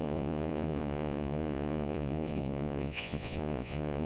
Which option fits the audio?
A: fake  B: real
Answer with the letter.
A